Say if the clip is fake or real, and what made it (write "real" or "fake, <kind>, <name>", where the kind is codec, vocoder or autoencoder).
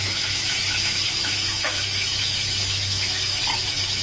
fake, autoencoder, DAC-VAE